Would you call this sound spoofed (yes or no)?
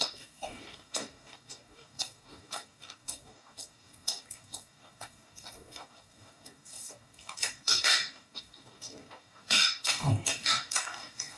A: yes